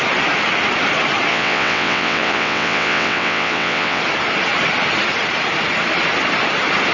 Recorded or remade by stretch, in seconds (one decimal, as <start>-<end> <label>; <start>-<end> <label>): 0.0-1.3 recorded; 1.3-4.0 remade; 4.0-6.9 recorded